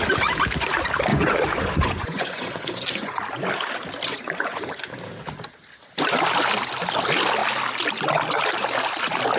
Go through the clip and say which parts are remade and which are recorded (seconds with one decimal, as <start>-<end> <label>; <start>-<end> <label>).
0.0-1.1 recorded; 1.1-3.2 remade; 3.2-4.1 recorded; 4.1-5.1 remade; 5.1-9.4 recorded